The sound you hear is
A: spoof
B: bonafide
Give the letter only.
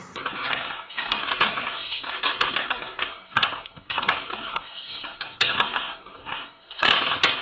A